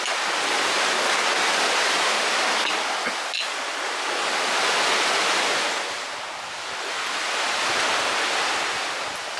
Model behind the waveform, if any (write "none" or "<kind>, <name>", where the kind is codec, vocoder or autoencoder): none